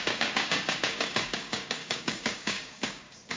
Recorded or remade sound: remade